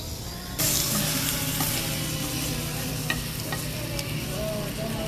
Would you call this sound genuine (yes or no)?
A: yes